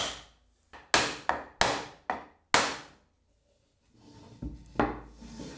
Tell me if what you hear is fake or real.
real